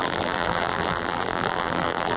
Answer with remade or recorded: remade